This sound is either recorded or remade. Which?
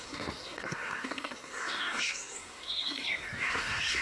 remade